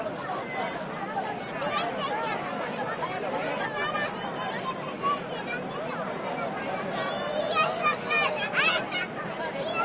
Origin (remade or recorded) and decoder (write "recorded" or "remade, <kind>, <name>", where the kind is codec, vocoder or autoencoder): recorded